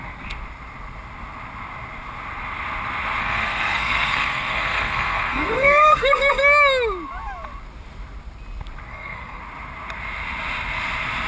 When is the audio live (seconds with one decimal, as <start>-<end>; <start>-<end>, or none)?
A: 0.0-3.2; 6.4-8.9; 9.4-11.3